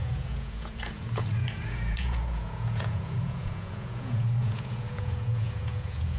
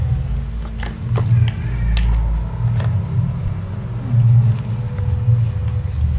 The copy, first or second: first